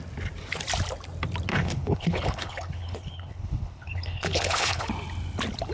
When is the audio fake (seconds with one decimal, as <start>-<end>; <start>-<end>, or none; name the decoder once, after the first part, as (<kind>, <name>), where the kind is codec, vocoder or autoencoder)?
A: 1.5-4.9 (codec, HILCodec)